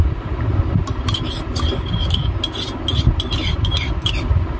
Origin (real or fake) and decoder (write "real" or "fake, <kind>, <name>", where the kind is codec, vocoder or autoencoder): real